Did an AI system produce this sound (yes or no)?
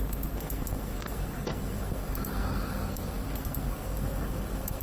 yes